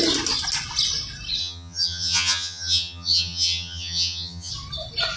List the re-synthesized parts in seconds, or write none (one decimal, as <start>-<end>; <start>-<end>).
1.4-4.5